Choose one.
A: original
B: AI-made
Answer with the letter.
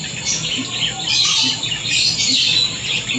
A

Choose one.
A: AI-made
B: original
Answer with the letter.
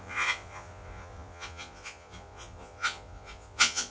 A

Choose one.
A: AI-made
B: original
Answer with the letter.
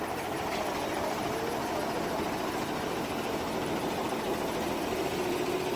B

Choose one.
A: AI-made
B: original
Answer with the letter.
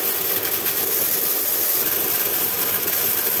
B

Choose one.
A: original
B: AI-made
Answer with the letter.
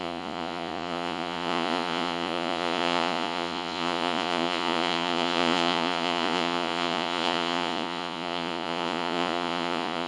B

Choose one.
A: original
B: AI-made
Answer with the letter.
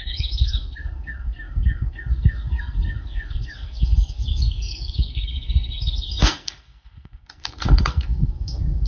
B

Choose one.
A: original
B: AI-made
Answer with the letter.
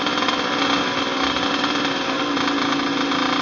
A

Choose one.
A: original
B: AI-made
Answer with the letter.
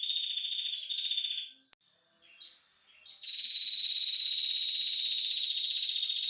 A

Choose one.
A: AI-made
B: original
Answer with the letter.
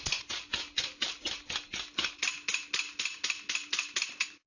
B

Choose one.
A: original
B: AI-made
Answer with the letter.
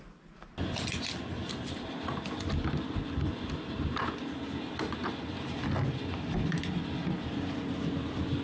A